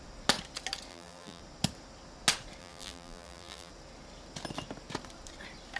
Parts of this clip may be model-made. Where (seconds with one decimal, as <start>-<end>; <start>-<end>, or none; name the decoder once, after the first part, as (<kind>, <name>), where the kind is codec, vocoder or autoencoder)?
0.9-1.4 (vocoder, BigVGAN v2); 2.6-3.7